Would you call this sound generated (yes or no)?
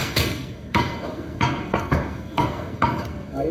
yes